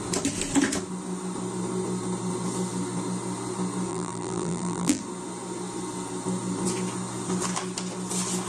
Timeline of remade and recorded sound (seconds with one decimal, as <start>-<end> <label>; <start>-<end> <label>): 0.0-3.9 recorded; 3.9-5.0 remade; 5.0-8.5 recorded